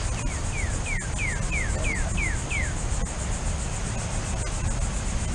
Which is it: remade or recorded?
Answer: recorded